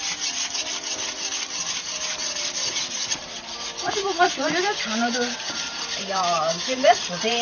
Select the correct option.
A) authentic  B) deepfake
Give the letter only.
B